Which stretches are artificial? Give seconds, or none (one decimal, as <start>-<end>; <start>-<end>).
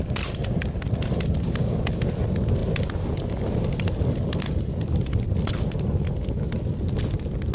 0.4-1.3; 2.6-7.0